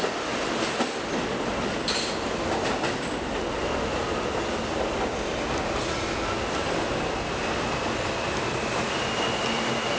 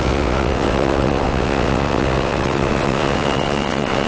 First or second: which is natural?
first